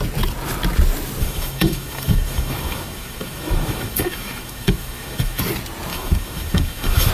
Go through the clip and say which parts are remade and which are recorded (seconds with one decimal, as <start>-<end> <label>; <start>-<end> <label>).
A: 0.0-1.2 recorded; 1.2-5.4 remade; 5.4-5.9 recorded; 5.9-7.1 remade